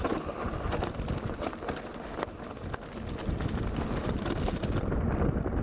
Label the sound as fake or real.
real